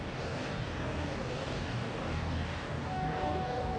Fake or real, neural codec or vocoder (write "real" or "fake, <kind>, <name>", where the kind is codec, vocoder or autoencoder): fake, codec, DAC